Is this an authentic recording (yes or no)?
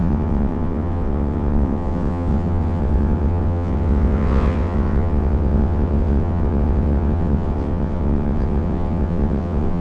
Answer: no